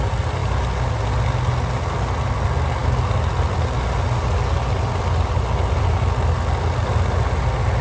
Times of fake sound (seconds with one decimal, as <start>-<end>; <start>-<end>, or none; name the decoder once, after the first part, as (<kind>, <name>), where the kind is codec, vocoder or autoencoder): none